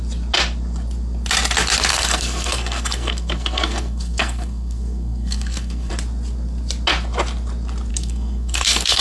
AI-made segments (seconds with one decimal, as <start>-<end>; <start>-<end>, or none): 1.9-5.9; 7.9-9.0